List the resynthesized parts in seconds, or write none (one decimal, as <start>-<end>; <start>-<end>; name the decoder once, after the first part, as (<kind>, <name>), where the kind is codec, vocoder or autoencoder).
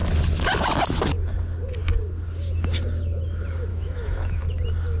3.7-4.4 (autoencoder, DAC-VAE)